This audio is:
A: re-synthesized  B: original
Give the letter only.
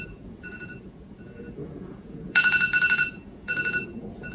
A